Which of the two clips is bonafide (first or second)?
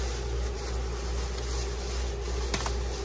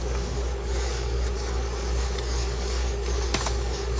first